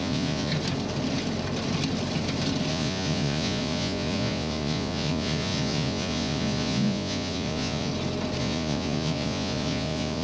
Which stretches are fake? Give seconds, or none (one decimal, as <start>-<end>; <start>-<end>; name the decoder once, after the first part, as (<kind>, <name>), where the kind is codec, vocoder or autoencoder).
0.0-0.5 (vocoder, Vocos); 2.7-7.9; 8.4-10.2